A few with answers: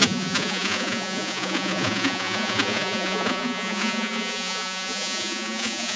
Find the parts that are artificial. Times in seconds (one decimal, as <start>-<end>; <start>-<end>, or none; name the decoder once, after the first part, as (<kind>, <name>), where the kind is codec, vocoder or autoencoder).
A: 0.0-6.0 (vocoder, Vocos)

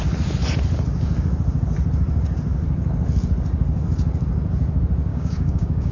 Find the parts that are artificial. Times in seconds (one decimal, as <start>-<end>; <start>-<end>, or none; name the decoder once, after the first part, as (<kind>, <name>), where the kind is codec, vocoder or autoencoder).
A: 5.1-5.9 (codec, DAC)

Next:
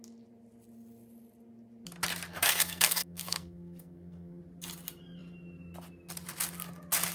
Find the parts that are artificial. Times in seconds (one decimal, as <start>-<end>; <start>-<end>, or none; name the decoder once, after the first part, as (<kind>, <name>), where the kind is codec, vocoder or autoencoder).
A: 2.3-4.4 (codec, SNAC)

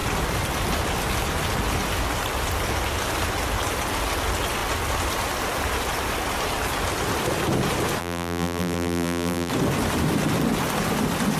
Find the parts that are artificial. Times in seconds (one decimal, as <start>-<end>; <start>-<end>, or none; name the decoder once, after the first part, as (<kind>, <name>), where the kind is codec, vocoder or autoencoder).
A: 8.0-9.5 (vocoder, BigVGAN v2)

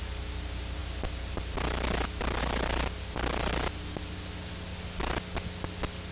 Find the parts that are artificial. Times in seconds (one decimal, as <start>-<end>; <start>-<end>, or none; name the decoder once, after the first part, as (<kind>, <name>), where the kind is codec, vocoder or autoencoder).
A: none

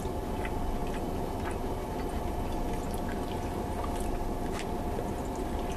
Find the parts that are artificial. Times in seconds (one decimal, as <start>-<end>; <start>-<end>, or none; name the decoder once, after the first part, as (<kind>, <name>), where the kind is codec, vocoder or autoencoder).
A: none

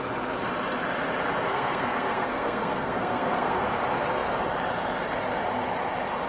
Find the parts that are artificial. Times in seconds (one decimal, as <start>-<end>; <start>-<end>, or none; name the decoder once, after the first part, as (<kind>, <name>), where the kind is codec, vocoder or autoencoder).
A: 1.5-3.7 (codec, SNAC)